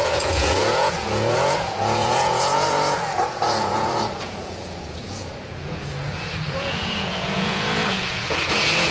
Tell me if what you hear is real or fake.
fake